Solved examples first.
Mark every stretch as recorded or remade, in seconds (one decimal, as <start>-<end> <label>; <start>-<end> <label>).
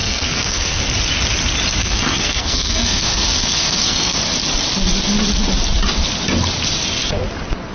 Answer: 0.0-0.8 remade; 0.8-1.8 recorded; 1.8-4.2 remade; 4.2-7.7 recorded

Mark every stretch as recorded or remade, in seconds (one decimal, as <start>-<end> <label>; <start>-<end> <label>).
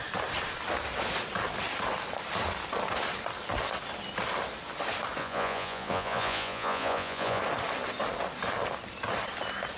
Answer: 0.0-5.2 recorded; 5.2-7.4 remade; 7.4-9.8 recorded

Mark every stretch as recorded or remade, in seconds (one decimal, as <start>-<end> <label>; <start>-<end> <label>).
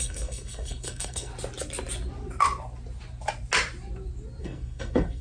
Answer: 0.0-1.3 remade; 1.3-4.4 recorded; 4.4-5.2 remade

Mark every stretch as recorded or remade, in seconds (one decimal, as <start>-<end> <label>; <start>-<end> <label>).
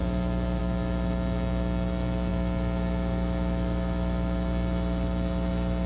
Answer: 0.0-5.9 remade